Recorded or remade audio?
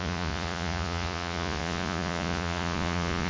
remade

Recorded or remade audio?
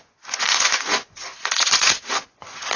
remade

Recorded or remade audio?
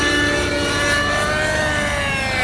recorded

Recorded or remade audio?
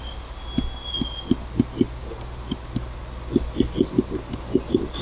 recorded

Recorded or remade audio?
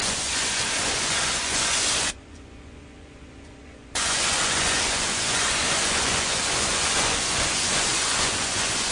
remade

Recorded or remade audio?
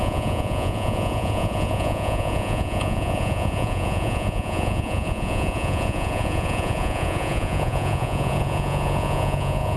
remade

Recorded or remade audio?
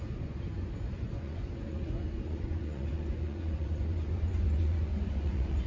remade